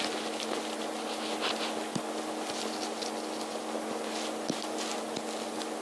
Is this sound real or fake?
real